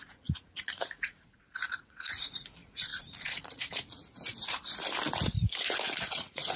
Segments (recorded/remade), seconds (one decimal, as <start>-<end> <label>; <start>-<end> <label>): 0.0-4.0 remade; 4.0-6.0 recorded; 6.0-6.6 remade